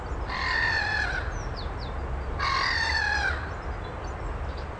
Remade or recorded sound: recorded